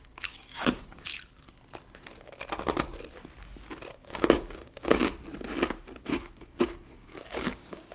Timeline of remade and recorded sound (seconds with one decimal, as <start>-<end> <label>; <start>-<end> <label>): 0.0-1.1 remade; 1.1-3.9 recorded; 3.9-5.1 remade; 5.1-6.0 recorded; 6.0-7.9 remade